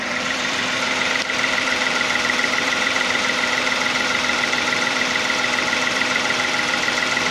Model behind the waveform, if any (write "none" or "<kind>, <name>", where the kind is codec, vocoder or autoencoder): vocoder, BigVGAN v2